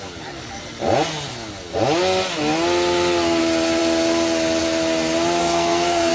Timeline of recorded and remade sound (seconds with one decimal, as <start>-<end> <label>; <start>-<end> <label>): 0.0-5.4 recorded; 5.4-6.1 remade